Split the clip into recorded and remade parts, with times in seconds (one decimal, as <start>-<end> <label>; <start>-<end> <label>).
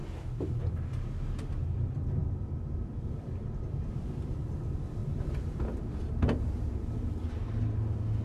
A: 0.0-0.9 remade; 0.9-2.2 recorded; 2.2-3.8 remade; 3.8-5.0 recorded; 5.0-6.9 remade; 6.9-8.2 recorded